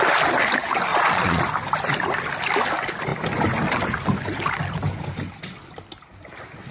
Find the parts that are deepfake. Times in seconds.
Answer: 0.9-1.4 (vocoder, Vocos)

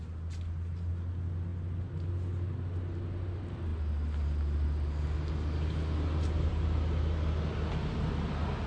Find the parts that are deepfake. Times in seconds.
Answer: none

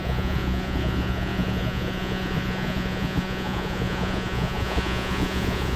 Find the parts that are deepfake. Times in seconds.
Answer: 0.0-5.8 (vocoder, Vocos)

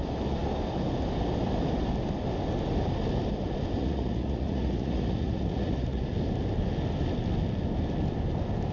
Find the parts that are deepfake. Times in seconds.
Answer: 3.8-6.0 (vocoder, Vocos)